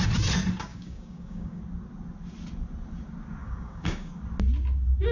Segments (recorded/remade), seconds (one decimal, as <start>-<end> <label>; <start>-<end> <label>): 0.0-0.7 recorded; 0.7-1.6 remade; 1.6-3.4 recorded; 3.4-4.2 remade; 4.2-5.1 recorded